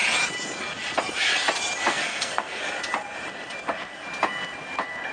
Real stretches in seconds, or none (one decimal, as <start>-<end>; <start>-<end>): 0.0-1.9; 2.6-5.1